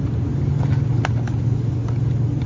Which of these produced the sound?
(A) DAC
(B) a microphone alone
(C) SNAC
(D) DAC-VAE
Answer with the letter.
B